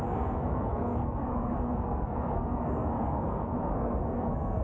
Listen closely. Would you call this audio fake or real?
fake